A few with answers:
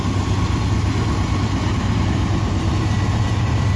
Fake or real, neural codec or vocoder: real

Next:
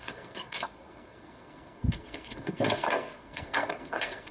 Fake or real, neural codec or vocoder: fake, codec, SNAC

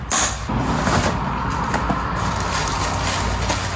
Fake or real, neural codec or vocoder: real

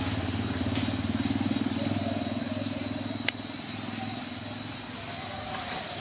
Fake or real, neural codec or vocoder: real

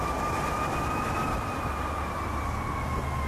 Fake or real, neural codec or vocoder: real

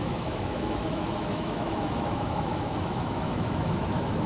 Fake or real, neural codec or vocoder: fake, autoencoder, DAC-VAE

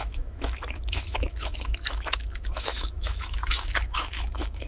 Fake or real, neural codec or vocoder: fake, autoencoder, DAC-VAE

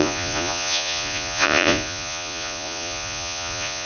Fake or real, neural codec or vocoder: fake, vocoder, Vocos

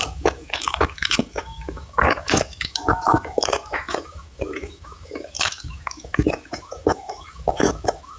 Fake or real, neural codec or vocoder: fake, autoencoder, DAC-VAE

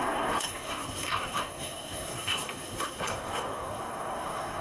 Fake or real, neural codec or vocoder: fake, codec, SNAC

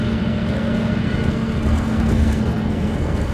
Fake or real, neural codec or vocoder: fake, codec, SNAC